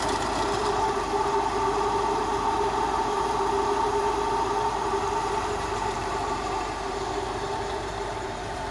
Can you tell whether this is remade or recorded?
remade